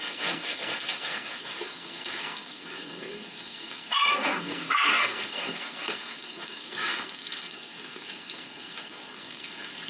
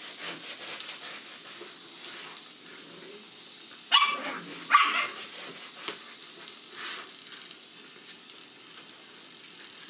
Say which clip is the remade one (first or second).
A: first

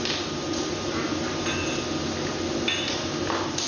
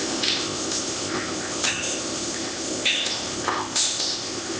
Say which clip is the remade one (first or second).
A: second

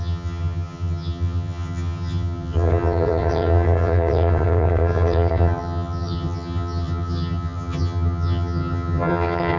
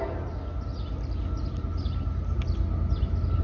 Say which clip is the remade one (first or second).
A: first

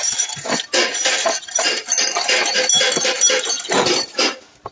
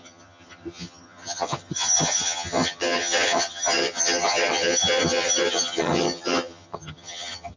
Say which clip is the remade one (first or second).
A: second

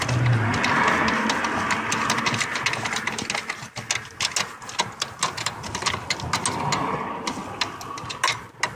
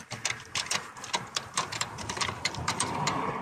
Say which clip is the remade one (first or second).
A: second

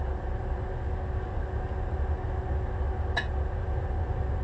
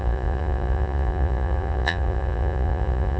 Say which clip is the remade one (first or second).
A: second